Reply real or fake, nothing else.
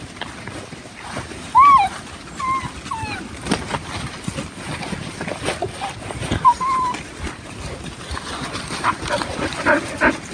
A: real